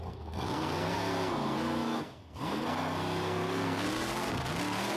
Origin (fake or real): fake